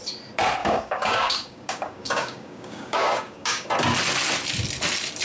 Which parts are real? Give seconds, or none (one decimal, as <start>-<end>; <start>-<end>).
0.0-0.6; 3.7-5.2

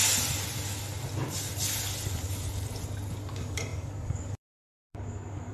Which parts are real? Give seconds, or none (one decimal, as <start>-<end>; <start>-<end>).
0.0-3.3

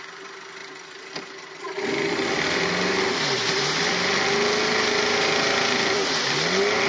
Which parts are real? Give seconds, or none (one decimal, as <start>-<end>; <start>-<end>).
0.0-6.9

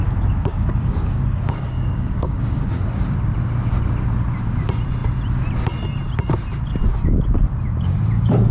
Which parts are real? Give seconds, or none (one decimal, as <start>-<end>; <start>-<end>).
0.0-0.5; 2.8-8.5

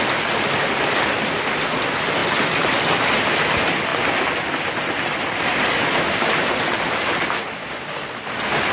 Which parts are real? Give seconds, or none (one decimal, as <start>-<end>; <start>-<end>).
0.0-7.6; 8.1-8.7

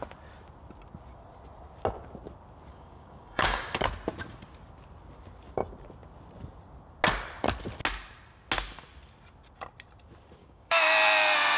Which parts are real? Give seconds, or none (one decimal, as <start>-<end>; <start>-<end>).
0.0-2.7; 3.8-10.4; 10.9-11.6